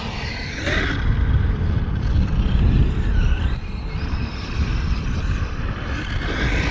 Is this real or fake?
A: real